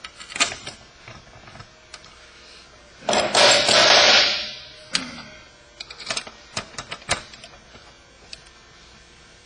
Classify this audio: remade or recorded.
recorded